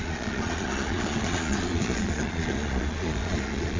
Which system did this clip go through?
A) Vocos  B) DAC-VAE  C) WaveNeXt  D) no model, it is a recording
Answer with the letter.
A